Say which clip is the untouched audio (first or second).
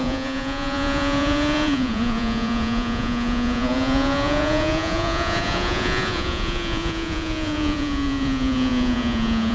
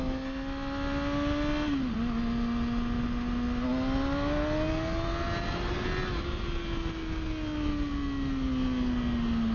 second